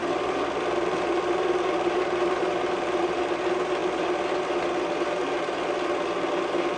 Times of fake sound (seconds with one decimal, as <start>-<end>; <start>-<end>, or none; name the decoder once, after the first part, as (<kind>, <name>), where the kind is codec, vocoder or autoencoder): 0.0-2.4 (vocoder, BigVGAN v2); 3.8-4.4